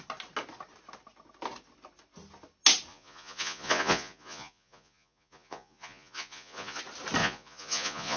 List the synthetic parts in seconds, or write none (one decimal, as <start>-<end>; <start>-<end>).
2.9-6.8; 7.2-8.2